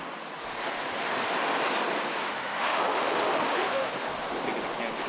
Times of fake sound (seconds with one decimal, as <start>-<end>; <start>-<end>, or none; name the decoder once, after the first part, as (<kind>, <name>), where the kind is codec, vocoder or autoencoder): 2.2-3.9 (autoencoder, DAC-VAE)